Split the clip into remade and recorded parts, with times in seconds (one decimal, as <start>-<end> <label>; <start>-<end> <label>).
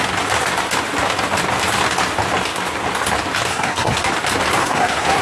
0.0-3.5 recorded; 3.5-4.1 remade; 4.1-4.6 recorded; 4.6-5.2 remade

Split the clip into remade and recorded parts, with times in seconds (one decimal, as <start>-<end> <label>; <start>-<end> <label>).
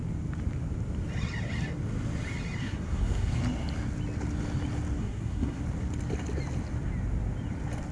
0.0-2.6 recorded; 2.6-3.3 remade; 3.3-5.0 recorded; 5.0-5.6 remade; 5.6-7.9 recorded